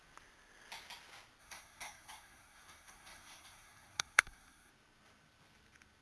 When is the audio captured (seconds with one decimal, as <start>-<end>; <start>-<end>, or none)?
0.0-1.4; 4.7-6.0